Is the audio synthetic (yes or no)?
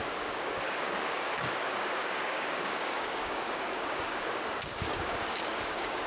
yes